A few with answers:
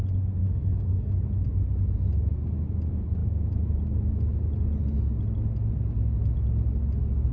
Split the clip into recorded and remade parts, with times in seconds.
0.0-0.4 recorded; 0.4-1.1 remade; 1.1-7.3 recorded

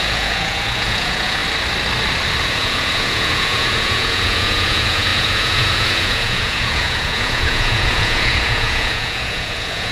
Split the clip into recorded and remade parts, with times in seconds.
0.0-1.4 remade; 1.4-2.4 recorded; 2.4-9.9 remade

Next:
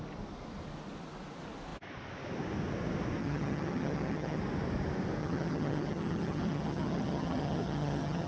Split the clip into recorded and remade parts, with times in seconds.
0.0-3.2 recorded; 3.2-4.4 remade; 4.4-5.2 recorded; 5.2-8.3 remade

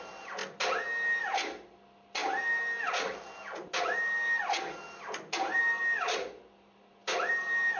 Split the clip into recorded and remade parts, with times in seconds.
0.0-7.8 recorded

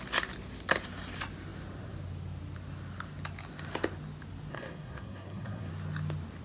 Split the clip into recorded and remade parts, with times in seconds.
0.0-4.5 recorded; 4.5-5.7 remade; 5.7-6.4 recorded

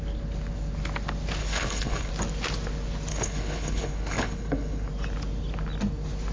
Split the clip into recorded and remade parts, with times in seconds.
0.0-1.4 recorded; 1.4-2.1 remade; 2.1-3.1 recorded; 3.1-4.9 remade; 4.9-6.3 recorded

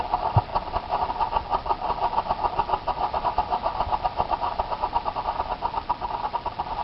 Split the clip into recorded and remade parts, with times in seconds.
0.0-6.8 recorded

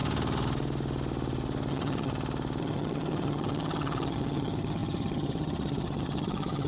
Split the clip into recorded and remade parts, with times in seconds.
0.0-1.7 recorded; 1.7-2.1 remade; 2.1-2.6 recorded; 2.6-6.7 remade